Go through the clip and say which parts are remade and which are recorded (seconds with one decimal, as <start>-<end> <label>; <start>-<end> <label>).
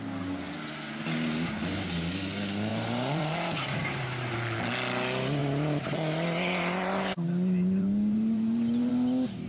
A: 0.0-2.7 recorded; 2.7-4.3 remade; 4.3-5.4 recorded; 5.4-8.9 remade; 8.9-9.5 recorded